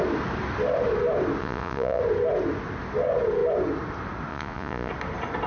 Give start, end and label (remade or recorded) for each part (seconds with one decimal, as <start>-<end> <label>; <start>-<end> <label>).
0.0-1.4 recorded; 1.4-2.0 remade; 2.0-4.3 recorded; 4.3-4.9 remade; 4.9-5.5 recorded